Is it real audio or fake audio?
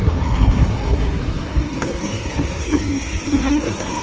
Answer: fake